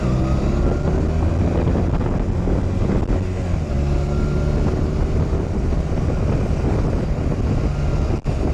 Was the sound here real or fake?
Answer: real